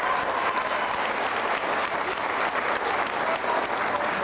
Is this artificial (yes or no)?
no